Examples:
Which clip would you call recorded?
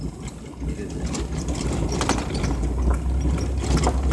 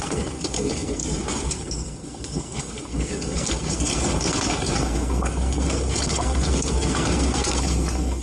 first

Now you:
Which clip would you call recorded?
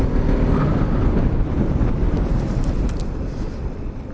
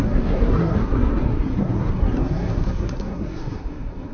first